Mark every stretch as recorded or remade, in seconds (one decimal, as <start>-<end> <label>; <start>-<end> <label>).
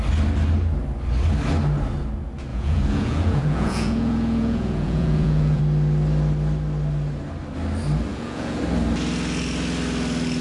0.0-2.5 recorded; 2.5-5.6 remade; 5.6-8.1 recorded; 8.1-8.6 remade; 8.6-10.4 recorded